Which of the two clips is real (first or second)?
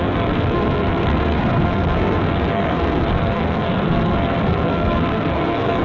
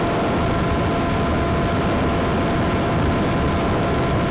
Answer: second